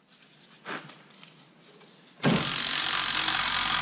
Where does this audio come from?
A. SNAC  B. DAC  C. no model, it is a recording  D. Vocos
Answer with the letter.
C